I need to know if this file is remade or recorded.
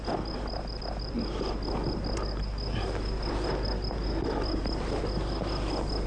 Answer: recorded